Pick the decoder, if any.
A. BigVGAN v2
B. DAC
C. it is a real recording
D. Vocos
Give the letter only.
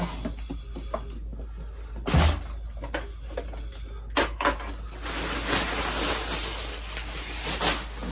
C